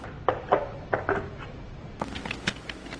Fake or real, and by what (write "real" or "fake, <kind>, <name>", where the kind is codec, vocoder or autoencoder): real